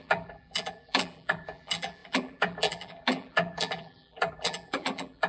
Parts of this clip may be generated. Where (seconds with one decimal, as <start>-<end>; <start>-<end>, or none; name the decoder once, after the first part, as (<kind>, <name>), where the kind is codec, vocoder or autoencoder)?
0.0-5.3 (vocoder, BigVGAN v2)